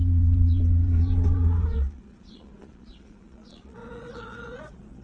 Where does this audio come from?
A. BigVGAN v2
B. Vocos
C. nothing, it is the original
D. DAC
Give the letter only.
B